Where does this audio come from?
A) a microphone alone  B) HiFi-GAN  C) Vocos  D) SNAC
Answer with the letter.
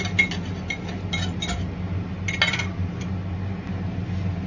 A